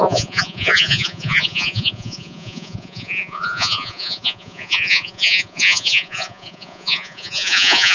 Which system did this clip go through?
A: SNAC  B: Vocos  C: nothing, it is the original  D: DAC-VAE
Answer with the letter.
B